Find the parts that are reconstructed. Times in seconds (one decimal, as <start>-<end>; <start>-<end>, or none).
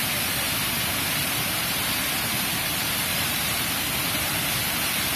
1.2-4.3